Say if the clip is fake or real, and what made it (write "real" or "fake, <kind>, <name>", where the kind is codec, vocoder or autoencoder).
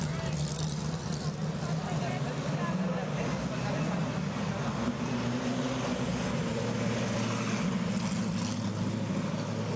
real